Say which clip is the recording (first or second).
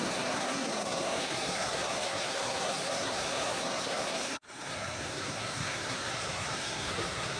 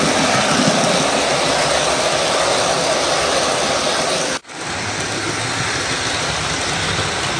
second